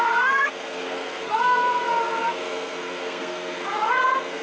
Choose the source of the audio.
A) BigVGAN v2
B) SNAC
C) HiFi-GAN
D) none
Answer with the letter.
B